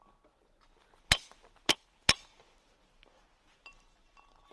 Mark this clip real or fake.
real